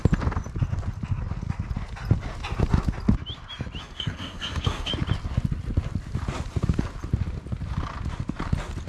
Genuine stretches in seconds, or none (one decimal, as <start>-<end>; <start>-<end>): 0.0-3.8; 4.9-8.9